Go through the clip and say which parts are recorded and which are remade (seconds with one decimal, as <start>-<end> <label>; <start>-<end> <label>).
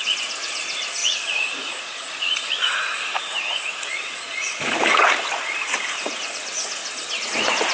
0.0-6.8 remade; 6.8-7.3 recorded; 7.3-7.7 remade